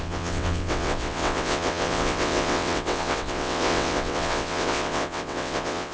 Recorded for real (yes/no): no